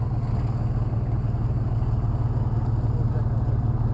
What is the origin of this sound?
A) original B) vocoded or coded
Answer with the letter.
A